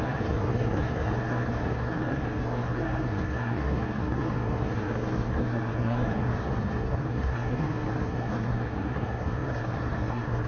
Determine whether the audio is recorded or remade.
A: remade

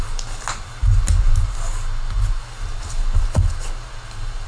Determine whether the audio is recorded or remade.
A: recorded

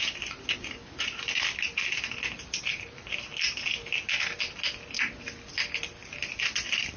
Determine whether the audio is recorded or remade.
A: recorded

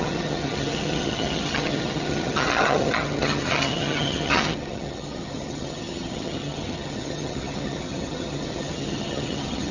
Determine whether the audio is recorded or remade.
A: remade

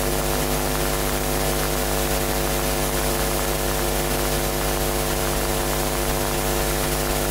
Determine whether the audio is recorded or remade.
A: recorded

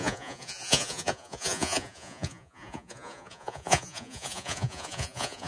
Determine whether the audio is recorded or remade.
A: remade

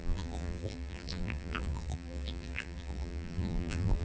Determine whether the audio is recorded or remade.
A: remade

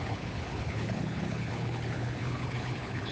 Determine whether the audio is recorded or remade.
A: remade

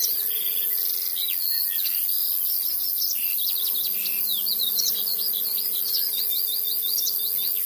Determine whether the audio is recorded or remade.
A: recorded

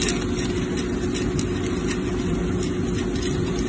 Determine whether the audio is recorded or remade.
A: recorded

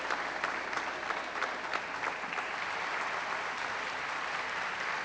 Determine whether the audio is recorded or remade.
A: recorded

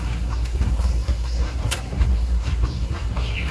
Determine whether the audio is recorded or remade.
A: remade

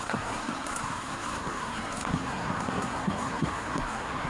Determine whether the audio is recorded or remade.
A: remade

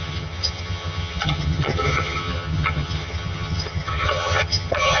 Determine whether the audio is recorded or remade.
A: remade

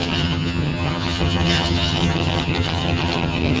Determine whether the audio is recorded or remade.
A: remade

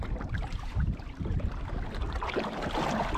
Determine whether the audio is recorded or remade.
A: remade